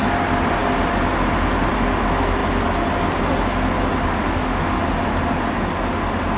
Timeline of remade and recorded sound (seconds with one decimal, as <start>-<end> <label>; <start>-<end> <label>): 0.0-4.1 recorded; 4.1-4.8 remade; 4.8-6.4 recorded